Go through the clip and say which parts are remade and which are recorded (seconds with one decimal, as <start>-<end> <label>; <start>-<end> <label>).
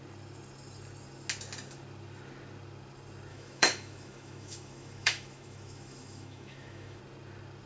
0.0-3.3 recorded; 3.3-7.0 remade; 7.0-7.7 recorded